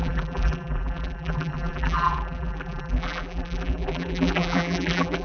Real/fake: fake